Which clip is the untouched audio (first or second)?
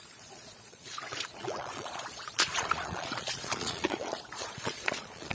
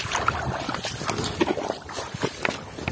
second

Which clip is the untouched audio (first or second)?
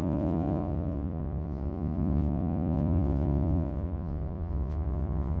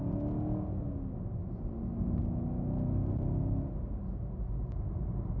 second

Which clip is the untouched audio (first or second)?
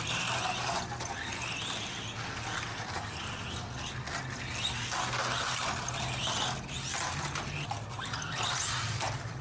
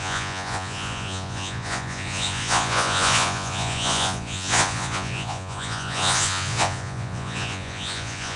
first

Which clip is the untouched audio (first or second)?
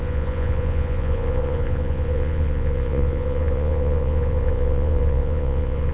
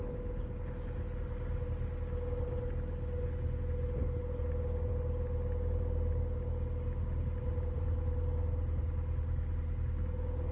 second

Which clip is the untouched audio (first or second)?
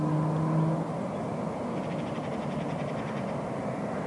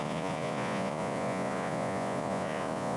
first